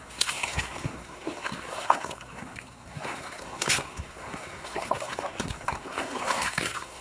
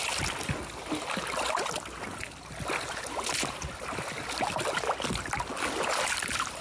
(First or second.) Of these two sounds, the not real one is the first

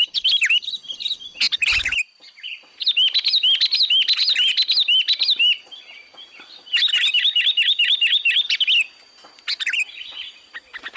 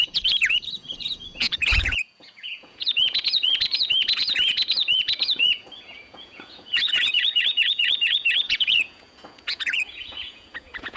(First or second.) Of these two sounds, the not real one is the second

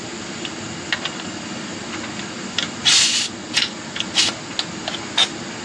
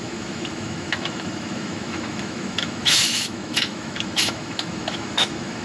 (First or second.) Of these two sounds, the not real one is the second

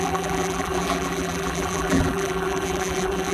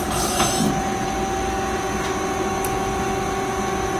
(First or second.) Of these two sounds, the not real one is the first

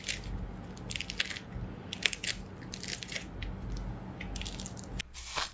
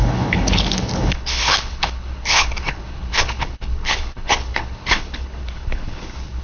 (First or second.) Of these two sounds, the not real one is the second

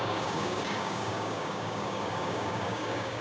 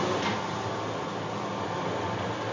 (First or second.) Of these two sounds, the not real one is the first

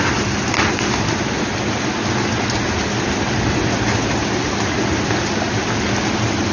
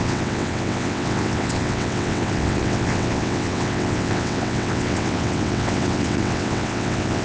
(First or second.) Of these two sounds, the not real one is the second